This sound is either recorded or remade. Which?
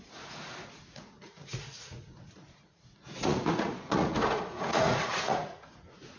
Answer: remade